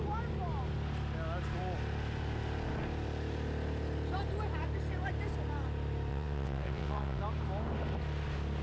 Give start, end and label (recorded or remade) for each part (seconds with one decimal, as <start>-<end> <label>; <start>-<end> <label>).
0.0-6.1 recorded; 6.1-7.2 remade; 7.2-8.6 recorded